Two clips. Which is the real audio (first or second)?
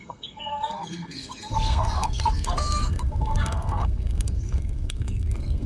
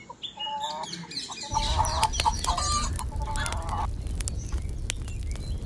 second